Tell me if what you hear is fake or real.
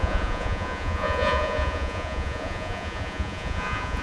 fake